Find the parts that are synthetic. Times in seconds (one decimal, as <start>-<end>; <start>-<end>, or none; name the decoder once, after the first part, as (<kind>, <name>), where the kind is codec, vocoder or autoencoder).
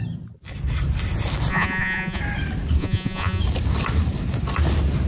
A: 1.5-2.2 (vocoder, Vocos); 2.8-3.4